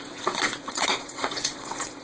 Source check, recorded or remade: remade